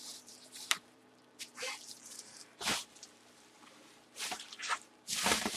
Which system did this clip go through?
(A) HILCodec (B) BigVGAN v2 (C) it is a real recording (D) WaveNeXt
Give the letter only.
B